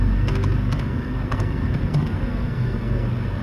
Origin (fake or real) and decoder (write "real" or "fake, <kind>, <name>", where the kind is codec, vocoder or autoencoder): fake, codec, SNAC